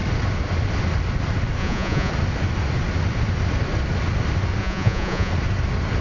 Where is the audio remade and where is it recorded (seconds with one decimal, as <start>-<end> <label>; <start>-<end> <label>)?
0.0-1.6 recorded; 1.6-2.1 remade; 2.1-4.6 recorded; 4.6-5.3 remade; 5.3-6.0 recorded